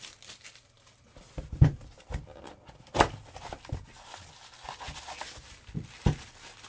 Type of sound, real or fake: real